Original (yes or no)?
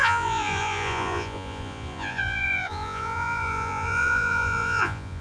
no